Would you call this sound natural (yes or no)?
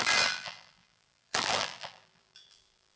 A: no